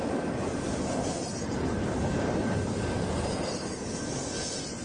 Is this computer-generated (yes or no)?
no